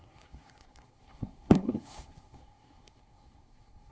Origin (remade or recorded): remade